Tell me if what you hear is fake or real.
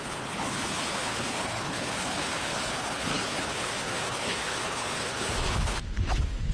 fake